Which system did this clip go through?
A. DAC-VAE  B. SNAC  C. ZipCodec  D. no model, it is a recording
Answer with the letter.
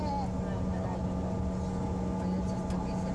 D